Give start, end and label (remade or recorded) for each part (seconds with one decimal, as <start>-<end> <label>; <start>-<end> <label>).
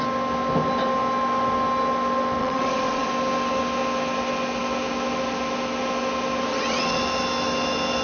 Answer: 0.0-2.4 recorded; 2.4-3.1 remade; 3.1-6.5 recorded; 6.5-7.0 remade; 7.0-8.0 recorded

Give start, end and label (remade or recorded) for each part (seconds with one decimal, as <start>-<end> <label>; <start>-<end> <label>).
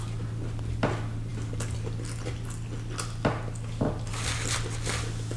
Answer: 0.0-5.4 recorded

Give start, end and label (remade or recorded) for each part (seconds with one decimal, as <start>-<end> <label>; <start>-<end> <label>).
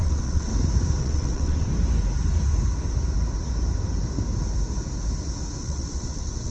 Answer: 0.0-0.5 remade; 0.5-1.0 recorded; 1.0-1.7 remade; 1.7-5.6 recorded; 5.6-6.5 remade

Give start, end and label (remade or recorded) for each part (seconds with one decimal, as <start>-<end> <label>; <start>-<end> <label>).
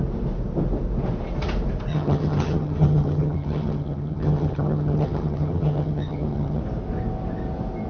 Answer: 0.0-1.9 recorded; 1.9-6.6 remade; 6.6-7.9 recorded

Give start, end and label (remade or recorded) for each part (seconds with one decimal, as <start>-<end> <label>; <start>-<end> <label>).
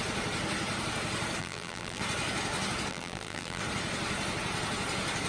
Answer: 0.0-1.4 recorded; 1.4-2.0 remade; 2.0-2.9 recorded; 2.9-3.6 remade; 3.6-5.3 recorded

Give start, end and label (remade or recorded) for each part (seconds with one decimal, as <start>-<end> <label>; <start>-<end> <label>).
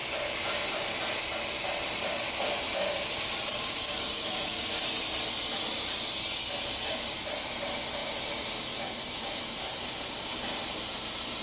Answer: 0.0-3.5 recorded; 3.5-5.0 remade; 5.0-11.4 recorded